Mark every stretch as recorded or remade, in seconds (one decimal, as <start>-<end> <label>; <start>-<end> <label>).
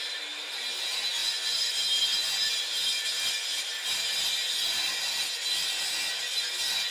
0.0-6.9 recorded